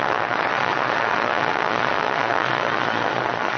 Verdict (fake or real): fake